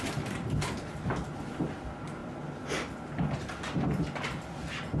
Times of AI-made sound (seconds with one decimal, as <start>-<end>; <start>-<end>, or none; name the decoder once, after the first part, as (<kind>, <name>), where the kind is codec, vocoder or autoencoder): none